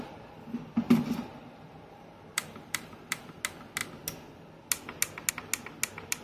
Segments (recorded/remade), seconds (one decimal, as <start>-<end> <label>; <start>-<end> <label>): 0.0-1.3 recorded; 1.3-3.4 remade; 3.4-6.2 recorded